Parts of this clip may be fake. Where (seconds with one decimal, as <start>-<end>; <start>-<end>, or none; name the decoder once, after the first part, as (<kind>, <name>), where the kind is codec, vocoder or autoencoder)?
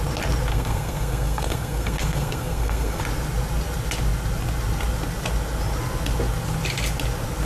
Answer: 0.5-3.0 (codec, SNAC)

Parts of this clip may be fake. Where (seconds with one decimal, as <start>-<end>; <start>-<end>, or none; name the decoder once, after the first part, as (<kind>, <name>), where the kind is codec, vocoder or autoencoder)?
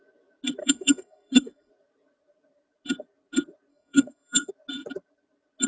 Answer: 0.6-1.7 (codec, SNAC); 3.7-4.5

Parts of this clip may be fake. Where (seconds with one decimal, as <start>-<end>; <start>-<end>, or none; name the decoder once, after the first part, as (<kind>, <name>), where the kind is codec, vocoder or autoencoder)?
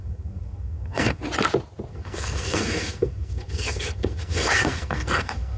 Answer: 0.0-1.2 (codec, SNAC); 1.9-5.6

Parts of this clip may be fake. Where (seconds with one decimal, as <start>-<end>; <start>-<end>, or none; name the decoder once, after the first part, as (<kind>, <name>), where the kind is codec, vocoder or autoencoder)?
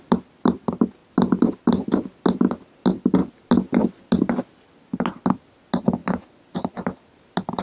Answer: none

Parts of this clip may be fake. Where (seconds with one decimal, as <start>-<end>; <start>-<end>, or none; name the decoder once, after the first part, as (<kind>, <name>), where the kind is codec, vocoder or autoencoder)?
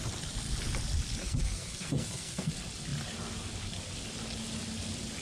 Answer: 1.2-2.5 (codec, SNAC)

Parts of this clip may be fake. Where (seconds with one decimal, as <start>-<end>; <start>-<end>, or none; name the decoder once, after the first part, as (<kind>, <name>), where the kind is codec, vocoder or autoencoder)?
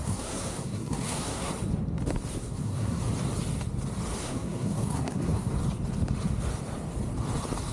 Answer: 0.0-1.5 (codec, SNAC); 2.4-3.0; 4.2-5.5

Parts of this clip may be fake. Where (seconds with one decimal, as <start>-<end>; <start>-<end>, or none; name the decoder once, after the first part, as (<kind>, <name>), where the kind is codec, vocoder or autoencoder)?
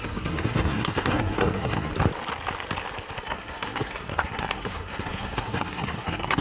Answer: 0.0-1.9 (codec, SNAC); 3.2-6.4